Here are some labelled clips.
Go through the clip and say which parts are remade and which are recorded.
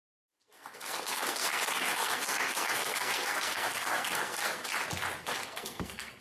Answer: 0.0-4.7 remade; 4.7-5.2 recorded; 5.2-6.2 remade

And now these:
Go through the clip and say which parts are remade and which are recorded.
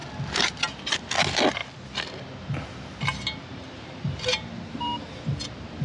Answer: 0.0-5.8 recorded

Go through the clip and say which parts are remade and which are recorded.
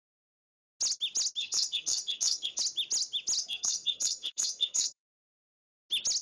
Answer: 0.0-1.4 recorded; 1.4-2.6 remade; 2.6-3.4 recorded; 3.4-5.5 remade; 5.5-6.2 recorded